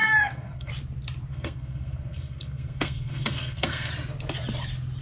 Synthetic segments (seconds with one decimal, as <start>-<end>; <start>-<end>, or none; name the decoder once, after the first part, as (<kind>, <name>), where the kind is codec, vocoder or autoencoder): 0.0-0.7 (codec, SNAC); 1.3-3.9